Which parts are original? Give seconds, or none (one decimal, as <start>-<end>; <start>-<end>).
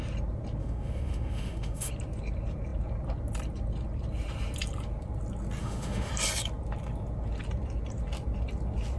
0.0-0.6; 1.9-5.6; 6.1-9.0